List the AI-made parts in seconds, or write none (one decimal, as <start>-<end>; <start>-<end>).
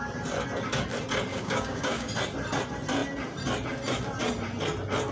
1.3-2.1